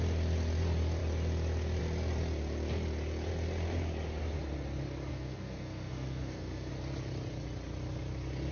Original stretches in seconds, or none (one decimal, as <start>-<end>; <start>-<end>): 0.0-5.1; 6.7-8.5